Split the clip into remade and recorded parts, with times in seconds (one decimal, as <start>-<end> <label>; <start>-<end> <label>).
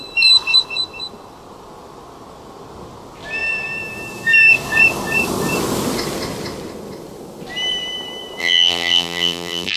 0.0-8.4 recorded; 8.4-9.8 remade